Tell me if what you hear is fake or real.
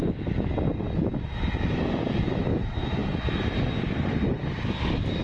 real